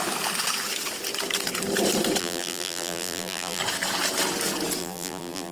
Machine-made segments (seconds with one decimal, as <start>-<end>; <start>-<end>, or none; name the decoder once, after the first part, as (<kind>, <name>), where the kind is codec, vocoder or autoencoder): 2.2-3.6 (vocoder, BigVGAN v2); 4.8-5.5